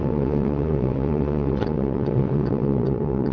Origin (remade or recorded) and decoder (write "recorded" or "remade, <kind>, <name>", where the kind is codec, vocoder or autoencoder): remade, vocoder, WaveNeXt